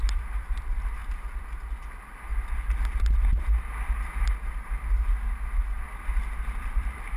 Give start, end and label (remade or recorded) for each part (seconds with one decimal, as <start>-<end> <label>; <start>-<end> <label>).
0.0-1.0 remade; 1.0-1.9 recorded; 1.9-2.3 remade; 2.3-6.6 recorded; 6.6-7.2 remade